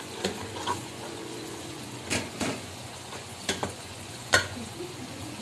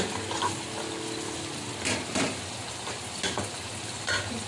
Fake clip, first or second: first